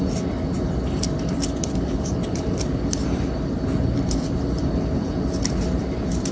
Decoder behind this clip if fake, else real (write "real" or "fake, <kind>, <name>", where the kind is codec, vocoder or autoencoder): real